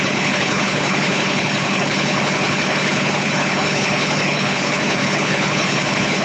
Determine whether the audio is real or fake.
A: fake